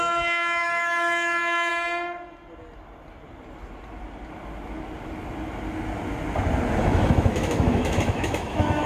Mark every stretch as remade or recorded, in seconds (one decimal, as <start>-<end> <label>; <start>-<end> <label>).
0.0-1.7 remade; 1.7-6.8 recorded; 6.8-8.9 remade